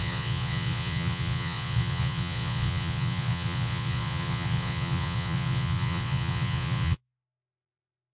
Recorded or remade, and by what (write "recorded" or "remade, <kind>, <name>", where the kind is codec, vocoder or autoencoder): remade, vocoder, Vocos